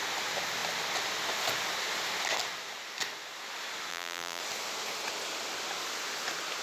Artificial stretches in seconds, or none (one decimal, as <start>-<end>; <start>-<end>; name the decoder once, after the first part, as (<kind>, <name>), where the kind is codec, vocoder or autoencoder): 3.9-4.4 (vocoder, BigVGAN v2)